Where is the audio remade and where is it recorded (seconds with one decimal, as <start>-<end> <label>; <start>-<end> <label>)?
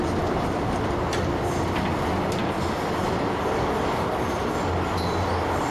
0.0-5.7 recorded